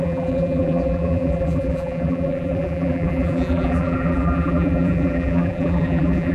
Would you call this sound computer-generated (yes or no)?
yes